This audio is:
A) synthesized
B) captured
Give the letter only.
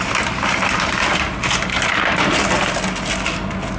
B